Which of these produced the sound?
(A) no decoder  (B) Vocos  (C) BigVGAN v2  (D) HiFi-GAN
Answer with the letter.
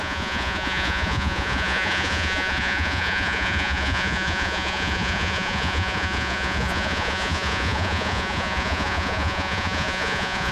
B